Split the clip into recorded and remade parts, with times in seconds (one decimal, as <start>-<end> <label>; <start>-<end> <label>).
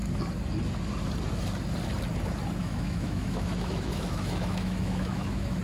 0.0-2.6 recorded; 2.6-5.6 remade